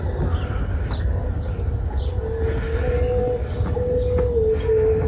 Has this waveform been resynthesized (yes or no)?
no